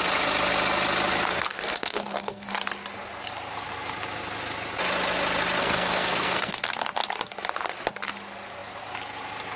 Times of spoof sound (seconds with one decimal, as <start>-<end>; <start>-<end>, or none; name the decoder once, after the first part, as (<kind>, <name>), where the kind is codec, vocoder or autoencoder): 1.3-2.5 (codec, SNAC); 5.6-6.6